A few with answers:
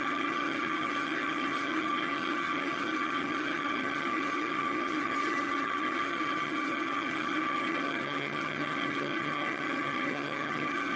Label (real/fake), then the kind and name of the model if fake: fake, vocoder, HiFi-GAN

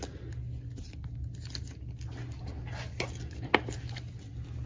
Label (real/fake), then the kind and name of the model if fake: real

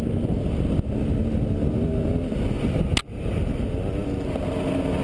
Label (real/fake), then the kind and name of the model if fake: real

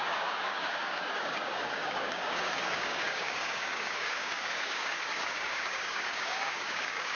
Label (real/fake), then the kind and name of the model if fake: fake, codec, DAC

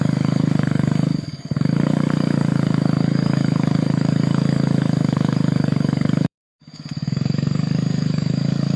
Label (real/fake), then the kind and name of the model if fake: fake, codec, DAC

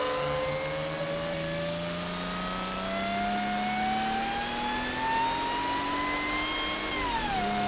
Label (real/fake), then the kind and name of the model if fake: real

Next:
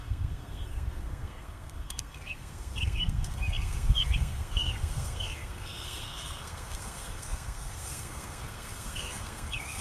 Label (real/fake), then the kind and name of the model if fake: fake, codec, SNAC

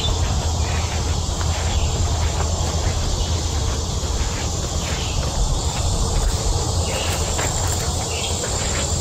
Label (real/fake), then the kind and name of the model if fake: real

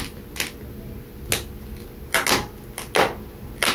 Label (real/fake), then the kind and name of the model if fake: real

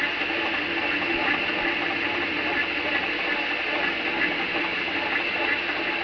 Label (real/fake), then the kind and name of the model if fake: real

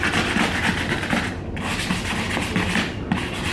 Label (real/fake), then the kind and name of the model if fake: real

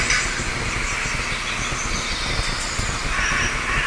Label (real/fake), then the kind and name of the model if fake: real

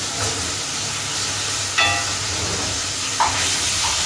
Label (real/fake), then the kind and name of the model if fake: real